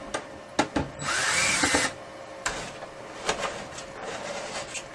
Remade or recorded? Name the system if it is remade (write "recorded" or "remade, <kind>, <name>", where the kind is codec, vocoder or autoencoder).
recorded